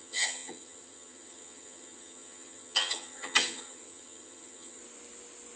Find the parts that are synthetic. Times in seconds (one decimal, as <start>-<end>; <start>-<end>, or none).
0.0-4.8